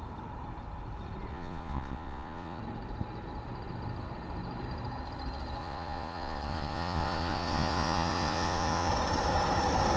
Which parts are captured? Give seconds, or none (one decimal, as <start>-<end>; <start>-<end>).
0.0-1.3; 2.6-5.6; 8.9-10.0

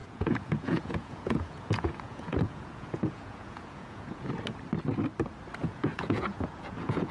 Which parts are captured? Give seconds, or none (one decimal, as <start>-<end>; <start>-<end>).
4.3-5.6

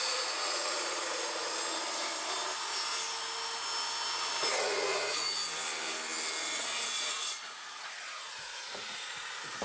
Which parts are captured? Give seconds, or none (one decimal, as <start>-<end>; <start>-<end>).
1.6-4.5; 5.4-6.4

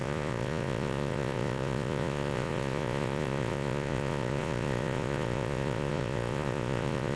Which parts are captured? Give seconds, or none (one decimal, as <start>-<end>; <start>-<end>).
none

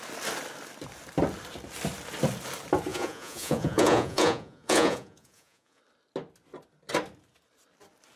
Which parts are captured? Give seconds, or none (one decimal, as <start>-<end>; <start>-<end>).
0.0-2.9; 5.8-8.2